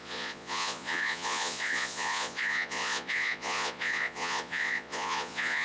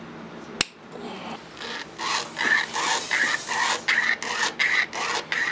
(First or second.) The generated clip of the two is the first